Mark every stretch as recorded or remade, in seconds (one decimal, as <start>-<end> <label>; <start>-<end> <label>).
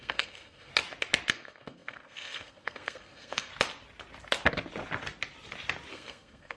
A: 0.0-0.7 remade; 0.7-1.3 recorded; 1.3-3.5 remade; 3.5-5.9 recorded; 5.9-6.6 remade